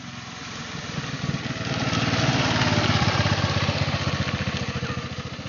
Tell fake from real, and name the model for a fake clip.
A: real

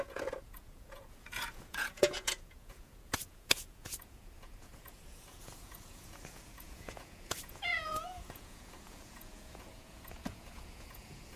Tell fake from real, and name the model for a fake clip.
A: fake, vocoder, Vocos